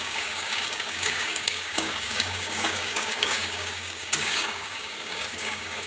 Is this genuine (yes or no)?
no